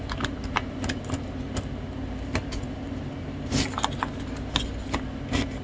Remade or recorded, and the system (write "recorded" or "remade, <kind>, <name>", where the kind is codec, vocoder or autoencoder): recorded